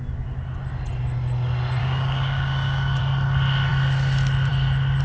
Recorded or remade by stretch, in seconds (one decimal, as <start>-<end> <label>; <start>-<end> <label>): 0.0-1.8 recorded; 1.8-3.0 remade; 3.0-5.0 recorded